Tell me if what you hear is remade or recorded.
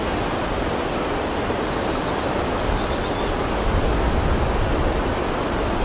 recorded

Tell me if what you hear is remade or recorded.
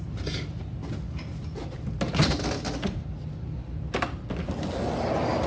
recorded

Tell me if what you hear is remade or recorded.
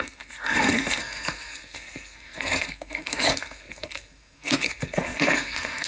remade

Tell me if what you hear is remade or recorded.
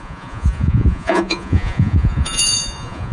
remade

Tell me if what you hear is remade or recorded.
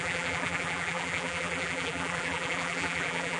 remade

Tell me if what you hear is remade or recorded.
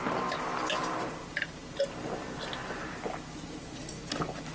recorded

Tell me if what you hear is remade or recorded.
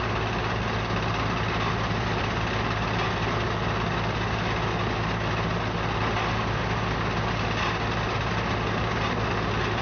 recorded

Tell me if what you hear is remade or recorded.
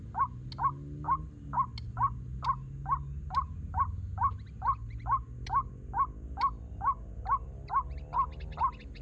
recorded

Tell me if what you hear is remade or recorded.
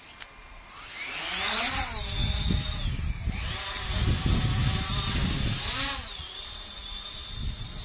recorded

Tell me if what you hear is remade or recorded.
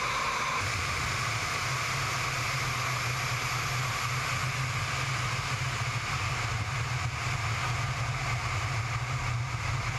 recorded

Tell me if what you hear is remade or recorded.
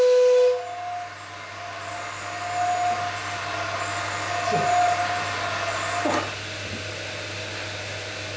recorded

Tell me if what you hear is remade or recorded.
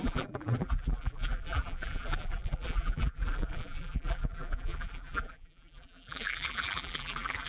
remade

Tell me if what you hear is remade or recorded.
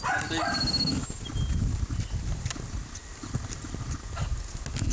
recorded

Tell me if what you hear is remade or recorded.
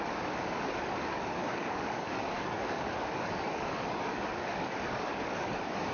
remade